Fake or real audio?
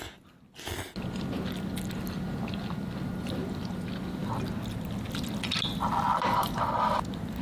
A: real